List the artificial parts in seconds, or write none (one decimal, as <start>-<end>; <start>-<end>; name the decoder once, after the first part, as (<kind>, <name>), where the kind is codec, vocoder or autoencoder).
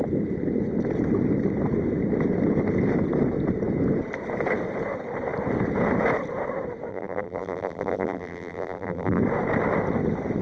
6.9-9.2 (vocoder, BigVGAN v2)